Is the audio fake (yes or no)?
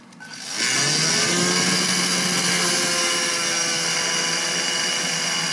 no